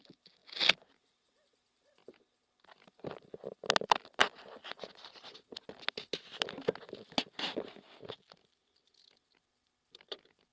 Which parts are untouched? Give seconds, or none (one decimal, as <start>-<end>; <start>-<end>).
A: 0.0-10.5